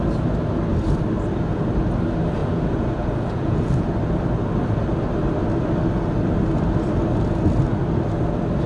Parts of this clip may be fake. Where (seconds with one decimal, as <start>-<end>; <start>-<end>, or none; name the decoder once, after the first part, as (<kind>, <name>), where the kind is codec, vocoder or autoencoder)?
2.4-3.9 (vocoder, Vocos)